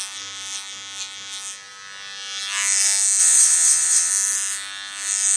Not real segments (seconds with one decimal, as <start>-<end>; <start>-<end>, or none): 3.2-4.1